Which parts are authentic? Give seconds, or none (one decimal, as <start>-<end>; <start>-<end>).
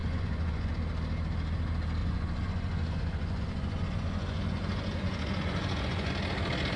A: 0.7-2.0; 6.1-6.8